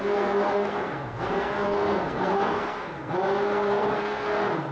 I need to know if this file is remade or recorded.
remade